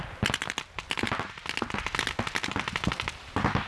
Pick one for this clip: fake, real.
real